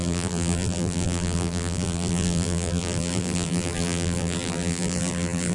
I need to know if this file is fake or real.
fake